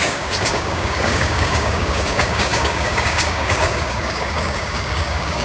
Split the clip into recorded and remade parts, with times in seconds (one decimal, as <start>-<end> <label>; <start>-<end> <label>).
0.0-5.4 remade